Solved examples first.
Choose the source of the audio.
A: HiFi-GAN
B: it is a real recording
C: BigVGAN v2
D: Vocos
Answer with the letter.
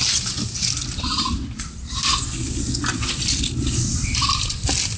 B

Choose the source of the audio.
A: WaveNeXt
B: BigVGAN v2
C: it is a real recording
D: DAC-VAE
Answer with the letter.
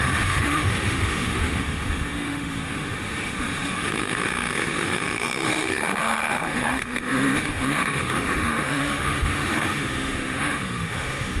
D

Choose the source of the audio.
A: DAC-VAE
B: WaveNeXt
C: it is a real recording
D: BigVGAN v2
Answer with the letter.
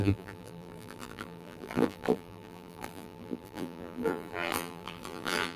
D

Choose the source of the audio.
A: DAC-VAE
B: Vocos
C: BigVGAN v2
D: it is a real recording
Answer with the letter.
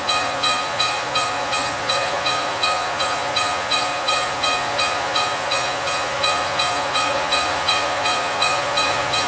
B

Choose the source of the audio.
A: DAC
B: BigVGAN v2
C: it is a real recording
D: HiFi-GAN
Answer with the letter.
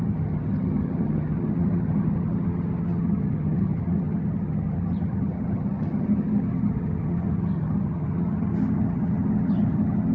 D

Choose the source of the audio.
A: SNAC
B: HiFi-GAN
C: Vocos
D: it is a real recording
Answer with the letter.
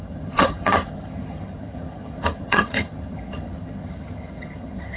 B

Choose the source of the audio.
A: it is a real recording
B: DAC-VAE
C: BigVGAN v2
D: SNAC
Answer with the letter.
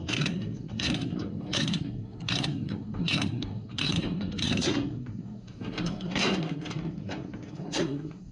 D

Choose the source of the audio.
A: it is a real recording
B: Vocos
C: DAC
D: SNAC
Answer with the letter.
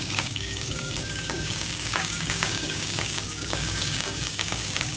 C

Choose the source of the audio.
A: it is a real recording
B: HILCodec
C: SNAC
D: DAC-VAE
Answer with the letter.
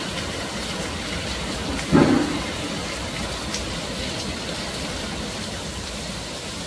A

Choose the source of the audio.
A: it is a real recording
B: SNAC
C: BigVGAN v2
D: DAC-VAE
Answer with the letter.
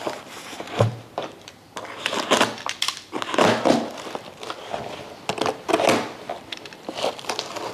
A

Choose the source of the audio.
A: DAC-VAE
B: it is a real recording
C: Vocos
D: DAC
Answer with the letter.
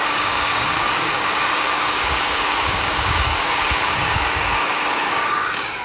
D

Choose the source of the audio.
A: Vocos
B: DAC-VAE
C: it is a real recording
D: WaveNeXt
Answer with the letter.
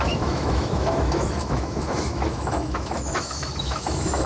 B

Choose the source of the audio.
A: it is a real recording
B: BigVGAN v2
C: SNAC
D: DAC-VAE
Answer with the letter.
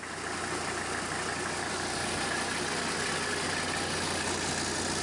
A